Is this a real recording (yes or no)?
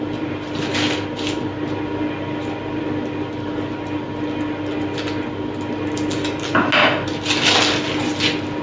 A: yes